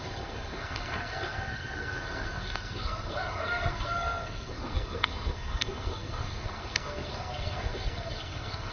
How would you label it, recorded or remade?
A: remade